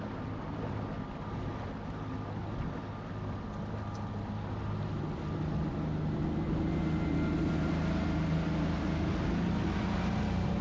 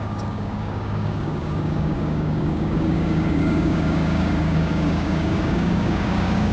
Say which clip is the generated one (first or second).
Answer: second